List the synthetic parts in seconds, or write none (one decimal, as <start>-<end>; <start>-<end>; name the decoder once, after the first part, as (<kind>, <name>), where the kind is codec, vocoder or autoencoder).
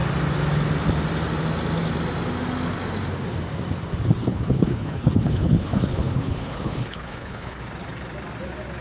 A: 4.3-7.6 (codec, HILCodec)